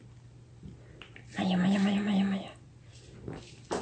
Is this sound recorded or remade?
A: recorded